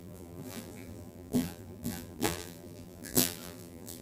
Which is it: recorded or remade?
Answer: remade